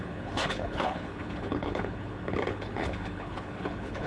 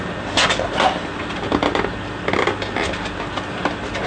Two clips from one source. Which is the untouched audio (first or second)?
second